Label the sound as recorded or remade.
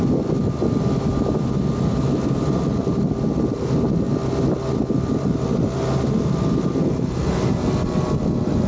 recorded